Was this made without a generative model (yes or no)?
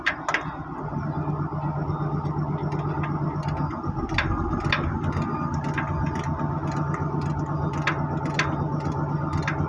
yes